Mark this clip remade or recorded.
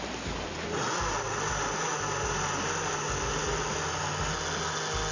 recorded